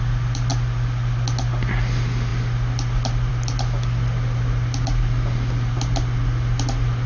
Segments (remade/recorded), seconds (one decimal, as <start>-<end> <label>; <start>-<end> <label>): 0.0-7.1 recorded